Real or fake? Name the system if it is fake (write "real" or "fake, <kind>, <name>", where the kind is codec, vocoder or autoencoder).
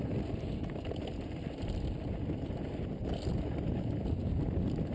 real